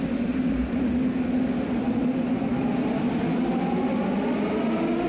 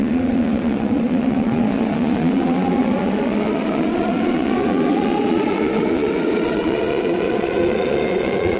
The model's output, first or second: second